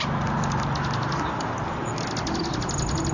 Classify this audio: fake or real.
real